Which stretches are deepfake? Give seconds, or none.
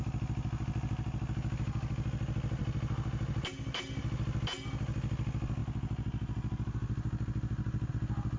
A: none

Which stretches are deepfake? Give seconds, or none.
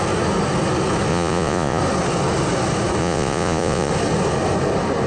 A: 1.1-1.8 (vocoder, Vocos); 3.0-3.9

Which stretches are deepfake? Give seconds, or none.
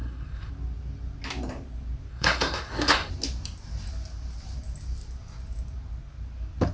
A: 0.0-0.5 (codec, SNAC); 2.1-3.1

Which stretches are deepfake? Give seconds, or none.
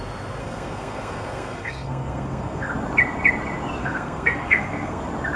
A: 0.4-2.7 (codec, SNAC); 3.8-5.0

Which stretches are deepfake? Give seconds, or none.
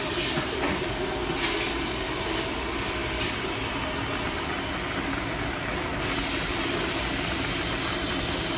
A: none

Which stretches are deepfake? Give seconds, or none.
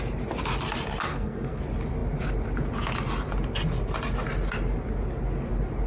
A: 1.1-1.6 (codec, SNAC)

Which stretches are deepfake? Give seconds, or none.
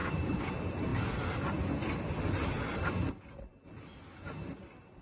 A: 0.0-0.5 (codec, DAC)